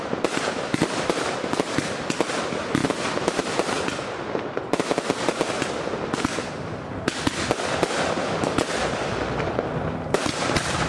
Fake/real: real